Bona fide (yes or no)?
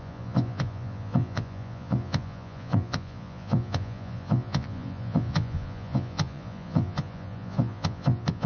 no